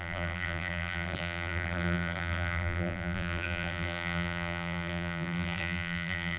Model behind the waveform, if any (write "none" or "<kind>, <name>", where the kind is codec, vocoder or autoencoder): vocoder, BigVGAN v2